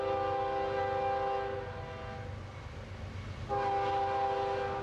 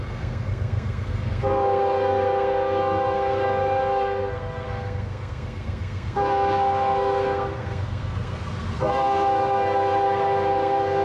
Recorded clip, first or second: first